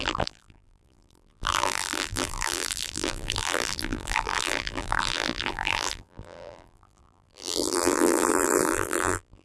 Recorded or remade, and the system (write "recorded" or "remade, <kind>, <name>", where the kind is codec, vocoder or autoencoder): remade, vocoder, BigVGAN v2